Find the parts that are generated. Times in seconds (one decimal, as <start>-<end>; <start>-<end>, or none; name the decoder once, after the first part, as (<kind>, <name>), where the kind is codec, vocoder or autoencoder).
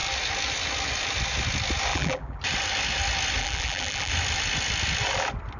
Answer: 1.9-2.4 (vocoder, BigVGAN v2); 3.4-4.1